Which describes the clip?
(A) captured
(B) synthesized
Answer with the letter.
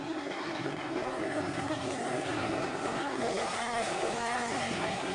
B